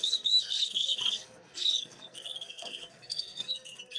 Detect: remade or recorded remade